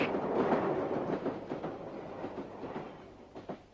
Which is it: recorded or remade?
remade